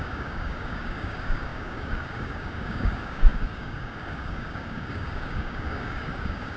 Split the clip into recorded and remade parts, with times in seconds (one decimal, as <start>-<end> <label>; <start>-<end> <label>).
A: 0.0-6.6 remade